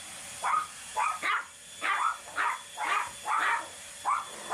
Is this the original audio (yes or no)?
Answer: yes